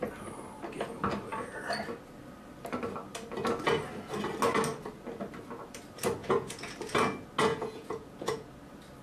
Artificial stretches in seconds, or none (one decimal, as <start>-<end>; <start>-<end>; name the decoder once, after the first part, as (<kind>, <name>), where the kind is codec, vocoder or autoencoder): 6.2-6.7 (vocoder, Vocos); 7.5-8.5